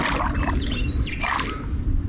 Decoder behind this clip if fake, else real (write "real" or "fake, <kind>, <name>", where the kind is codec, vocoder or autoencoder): real